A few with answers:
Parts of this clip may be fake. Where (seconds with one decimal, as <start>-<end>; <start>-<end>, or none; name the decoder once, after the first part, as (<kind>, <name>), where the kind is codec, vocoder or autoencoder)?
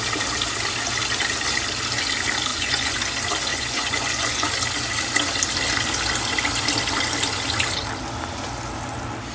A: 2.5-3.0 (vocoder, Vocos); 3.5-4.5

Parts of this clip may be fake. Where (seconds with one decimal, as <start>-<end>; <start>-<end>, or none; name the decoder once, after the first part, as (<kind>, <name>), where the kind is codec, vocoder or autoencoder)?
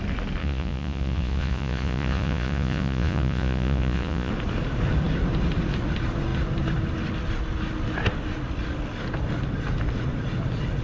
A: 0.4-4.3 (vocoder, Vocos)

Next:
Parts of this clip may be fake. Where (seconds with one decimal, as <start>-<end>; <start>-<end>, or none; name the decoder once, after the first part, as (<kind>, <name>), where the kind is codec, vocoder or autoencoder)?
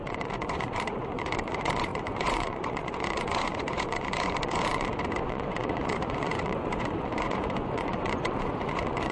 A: 0.0-9.1 (vocoder, Vocos)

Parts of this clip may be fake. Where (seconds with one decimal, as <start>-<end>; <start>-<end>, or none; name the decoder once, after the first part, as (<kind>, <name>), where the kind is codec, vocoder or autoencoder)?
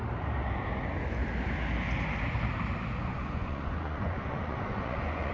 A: 3.0-5.3 (vocoder, Vocos)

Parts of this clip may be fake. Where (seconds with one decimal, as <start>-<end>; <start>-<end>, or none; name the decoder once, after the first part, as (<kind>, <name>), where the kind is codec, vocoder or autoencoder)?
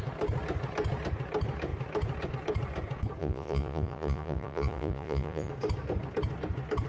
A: 3.2-5.5 (vocoder, Vocos)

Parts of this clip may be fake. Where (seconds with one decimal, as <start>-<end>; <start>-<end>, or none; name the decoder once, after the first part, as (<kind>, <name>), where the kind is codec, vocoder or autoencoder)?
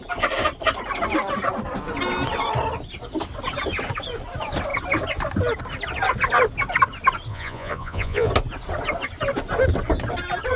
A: 7.3-8.3 (vocoder, Vocos)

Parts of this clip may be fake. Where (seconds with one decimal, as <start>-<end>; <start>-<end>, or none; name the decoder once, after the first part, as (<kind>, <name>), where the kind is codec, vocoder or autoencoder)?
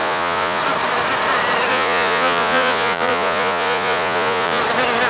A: 0.0-0.6 (vocoder, Vocos); 1.7-4.6